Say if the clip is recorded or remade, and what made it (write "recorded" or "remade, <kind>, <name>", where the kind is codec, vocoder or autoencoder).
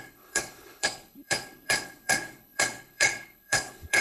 remade, codec, HILCodec